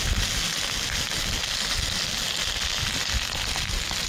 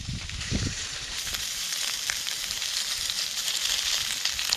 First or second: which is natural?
first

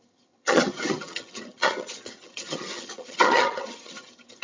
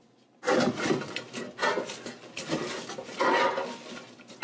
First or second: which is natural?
second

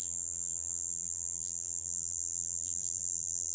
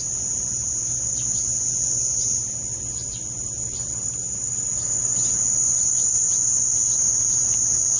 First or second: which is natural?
second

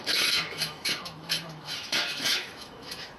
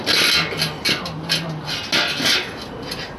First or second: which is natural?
second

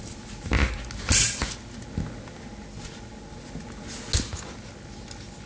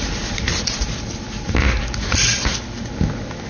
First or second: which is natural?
first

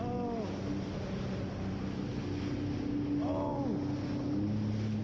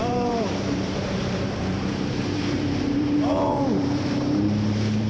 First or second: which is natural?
first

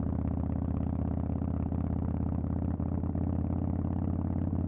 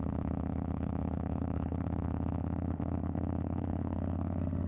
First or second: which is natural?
first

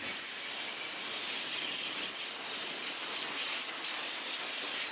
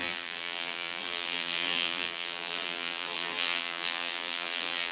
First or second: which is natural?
first